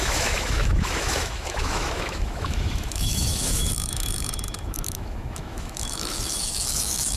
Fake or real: fake